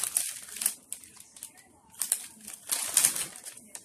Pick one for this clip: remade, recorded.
recorded